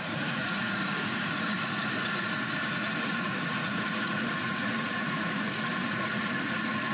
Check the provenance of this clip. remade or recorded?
remade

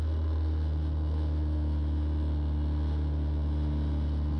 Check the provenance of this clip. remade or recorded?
recorded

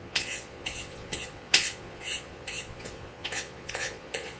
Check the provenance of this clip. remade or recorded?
remade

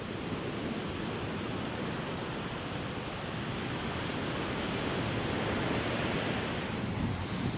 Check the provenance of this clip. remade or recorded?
recorded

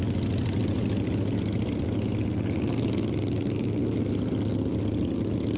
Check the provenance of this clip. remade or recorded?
recorded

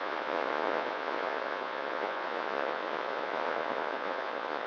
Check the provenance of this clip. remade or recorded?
remade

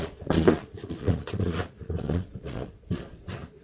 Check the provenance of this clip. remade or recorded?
remade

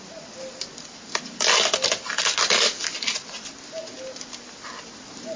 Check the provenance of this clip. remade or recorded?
recorded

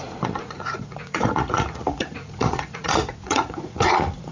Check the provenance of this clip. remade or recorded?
remade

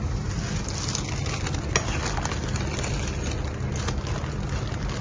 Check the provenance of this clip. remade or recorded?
recorded